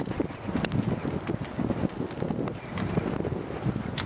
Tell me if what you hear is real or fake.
real